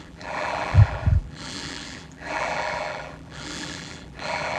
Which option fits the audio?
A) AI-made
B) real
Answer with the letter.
A